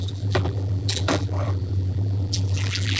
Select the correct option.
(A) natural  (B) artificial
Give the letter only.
B